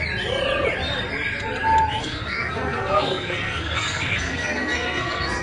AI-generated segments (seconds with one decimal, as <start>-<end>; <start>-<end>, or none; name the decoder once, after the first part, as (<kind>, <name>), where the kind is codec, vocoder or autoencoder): 2.0-5.4 (codec, SNAC)